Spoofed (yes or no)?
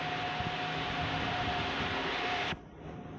no